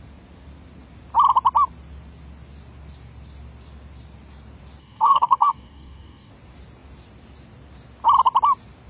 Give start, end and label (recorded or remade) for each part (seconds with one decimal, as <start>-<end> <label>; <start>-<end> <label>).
0.0-4.8 recorded; 4.8-6.3 remade; 6.3-8.9 recorded